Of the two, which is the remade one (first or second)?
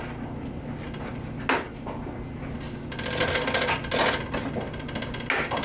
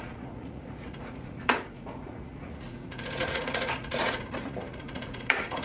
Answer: second